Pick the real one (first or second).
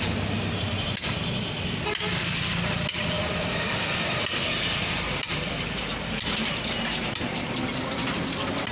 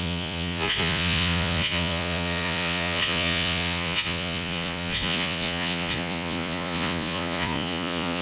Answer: first